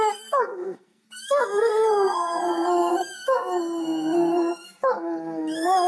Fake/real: fake